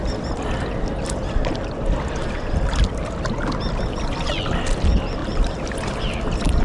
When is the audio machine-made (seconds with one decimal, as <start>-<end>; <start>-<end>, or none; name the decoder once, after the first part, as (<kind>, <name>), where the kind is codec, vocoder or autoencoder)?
5.2-6.1 (vocoder, BigVGAN v2)